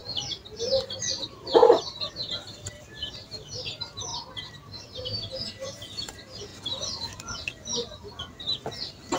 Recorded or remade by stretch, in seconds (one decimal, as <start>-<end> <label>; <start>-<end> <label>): 0.0-1.1 recorded; 1.1-4.1 remade; 4.1-4.8 recorded; 4.8-6.5 remade; 6.5-9.2 recorded